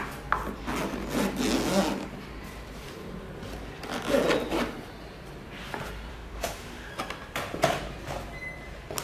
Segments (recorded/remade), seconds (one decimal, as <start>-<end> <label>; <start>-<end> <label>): 0.0-6.1 recorded; 6.1-6.9 remade; 6.9-9.0 recorded